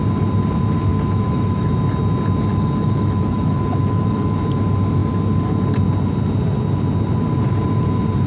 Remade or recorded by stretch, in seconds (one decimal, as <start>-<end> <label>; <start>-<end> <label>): 0.0-0.9 recorded; 0.9-1.7 remade; 1.7-2.5 recorded; 2.5-4.4 remade; 4.4-8.3 recorded